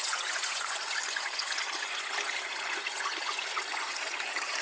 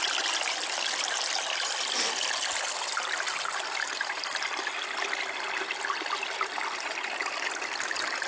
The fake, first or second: first